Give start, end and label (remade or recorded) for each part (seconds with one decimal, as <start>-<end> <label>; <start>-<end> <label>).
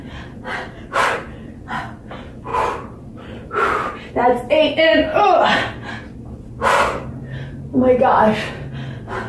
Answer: 0.0-2.5 recorded; 2.5-4.1 remade; 4.1-9.3 recorded